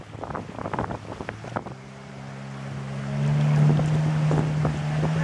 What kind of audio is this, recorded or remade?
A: recorded